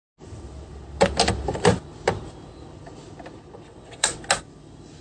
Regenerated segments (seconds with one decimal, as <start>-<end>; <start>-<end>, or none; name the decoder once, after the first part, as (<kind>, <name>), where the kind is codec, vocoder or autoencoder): 3.7-4.2 (vocoder, WaveNeXt)